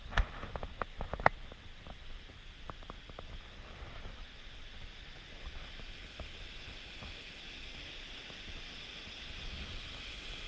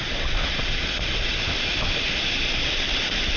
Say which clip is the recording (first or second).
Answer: first